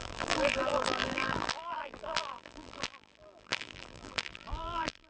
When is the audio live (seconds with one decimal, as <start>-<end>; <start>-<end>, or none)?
none